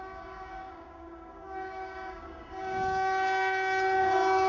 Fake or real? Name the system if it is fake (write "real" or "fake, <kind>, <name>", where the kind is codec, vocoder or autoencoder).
fake, codec, DAC